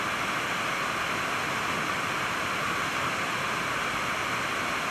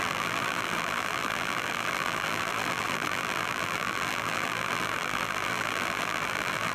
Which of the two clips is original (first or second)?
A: first